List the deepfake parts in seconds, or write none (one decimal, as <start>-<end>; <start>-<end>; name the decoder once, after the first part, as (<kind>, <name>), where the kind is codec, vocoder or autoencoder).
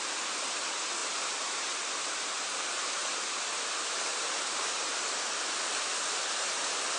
1.0-2.3 (vocoder, BigVGAN v2); 3.0-4.9